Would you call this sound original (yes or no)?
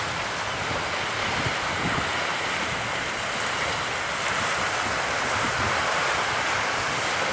yes